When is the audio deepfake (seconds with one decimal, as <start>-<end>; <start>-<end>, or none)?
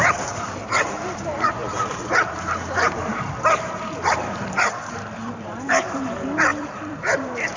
0.0-7.6